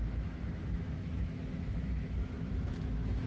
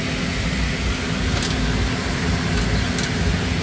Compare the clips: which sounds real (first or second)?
second